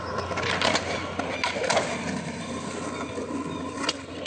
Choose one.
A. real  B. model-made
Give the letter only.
A